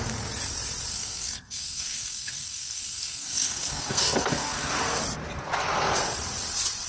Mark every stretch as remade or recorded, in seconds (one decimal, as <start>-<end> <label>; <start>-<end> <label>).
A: 0.0-0.9 recorded; 0.9-5.0 remade; 5.0-6.9 recorded